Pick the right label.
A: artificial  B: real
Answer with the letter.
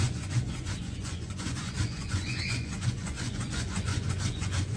A